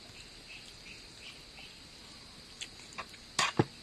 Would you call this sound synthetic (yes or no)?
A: no